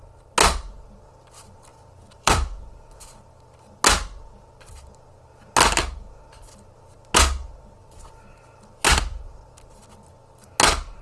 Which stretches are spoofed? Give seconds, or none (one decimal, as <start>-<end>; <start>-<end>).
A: 1.7-3.0; 7.8-9.4